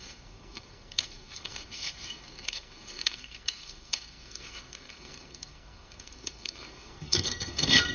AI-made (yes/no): yes